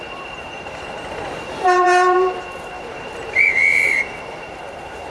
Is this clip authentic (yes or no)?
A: no